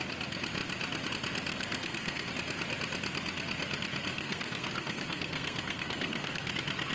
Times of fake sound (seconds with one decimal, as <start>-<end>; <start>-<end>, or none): 1.5-2.3; 4.1-6.5